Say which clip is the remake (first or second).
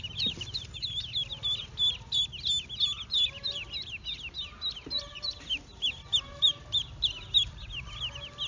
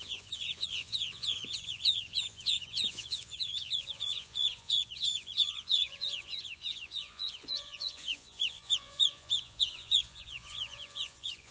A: second